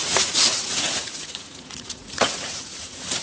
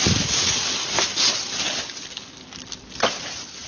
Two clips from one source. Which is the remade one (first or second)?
first